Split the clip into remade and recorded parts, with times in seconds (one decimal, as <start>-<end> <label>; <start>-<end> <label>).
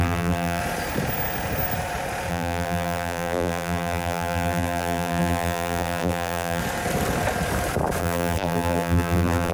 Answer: 0.0-0.6 remade; 0.6-2.3 recorded; 2.3-6.6 remade; 6.6-8.0 recorded; 8.0-9.5 remade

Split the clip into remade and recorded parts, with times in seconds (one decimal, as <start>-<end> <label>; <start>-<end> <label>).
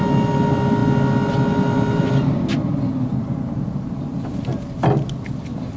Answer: 0.0-5.8 recorded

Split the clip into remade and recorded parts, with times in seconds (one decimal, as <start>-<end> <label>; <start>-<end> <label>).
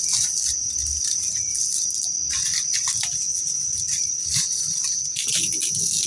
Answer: 0.0-3.3 recorded; 3.3-5.3 remade; 5.3-6.1 recorded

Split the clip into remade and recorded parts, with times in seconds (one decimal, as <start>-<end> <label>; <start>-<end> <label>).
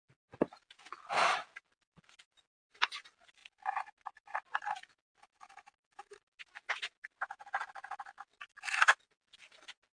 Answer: 0.0-9.9 recorded